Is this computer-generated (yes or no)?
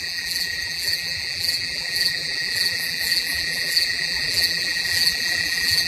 yes